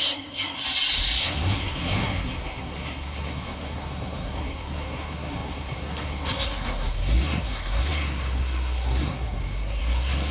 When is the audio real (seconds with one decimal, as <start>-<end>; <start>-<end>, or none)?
0.6-1.2